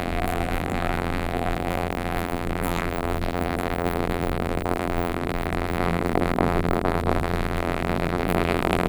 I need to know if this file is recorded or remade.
remade